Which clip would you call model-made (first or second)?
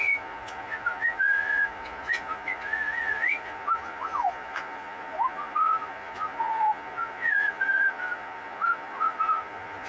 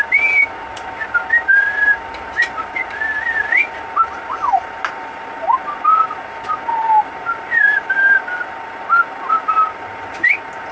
first